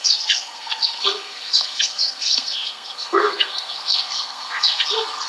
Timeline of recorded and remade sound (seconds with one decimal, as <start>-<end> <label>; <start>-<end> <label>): 0.0-5.3 remade

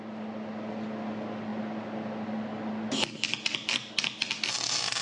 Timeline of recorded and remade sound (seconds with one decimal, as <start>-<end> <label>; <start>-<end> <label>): 0.0-5.0 recorded

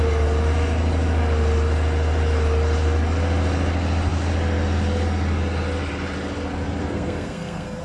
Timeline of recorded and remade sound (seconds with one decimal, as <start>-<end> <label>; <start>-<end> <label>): 0.0-6.8 recorded; 6.8-7.8 remade

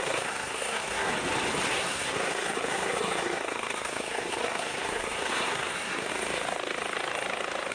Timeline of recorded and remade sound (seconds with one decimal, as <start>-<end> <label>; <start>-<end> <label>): 0.0-1.1 remade; 1.1-1.7 recorded; 1.7-6.1 remade; 6.1-7.7 recorded